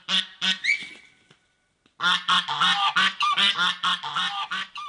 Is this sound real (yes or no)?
yes